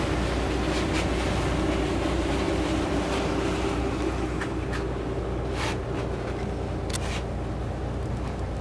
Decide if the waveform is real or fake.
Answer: real